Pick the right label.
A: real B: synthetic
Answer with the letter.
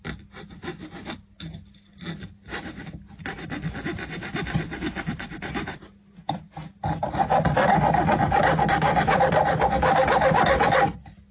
A